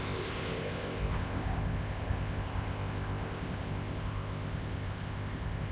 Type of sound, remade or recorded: remade